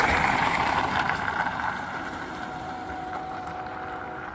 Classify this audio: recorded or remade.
remade